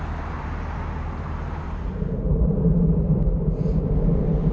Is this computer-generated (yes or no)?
yes